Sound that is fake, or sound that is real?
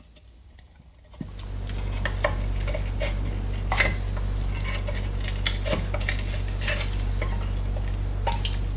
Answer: real